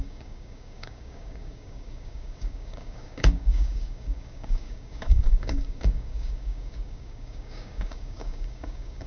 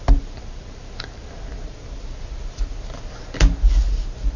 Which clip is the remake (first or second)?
first